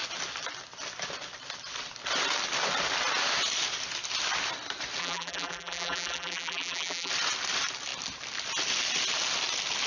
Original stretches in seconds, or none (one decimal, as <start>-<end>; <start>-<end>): 0.0-5.0; 7.1-9.9